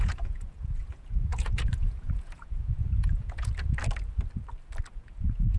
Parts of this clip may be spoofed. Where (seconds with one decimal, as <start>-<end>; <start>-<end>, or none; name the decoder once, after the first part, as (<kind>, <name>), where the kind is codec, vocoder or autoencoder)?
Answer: 0.0-3.5 (vocoder, Vocos); 4.9-5.6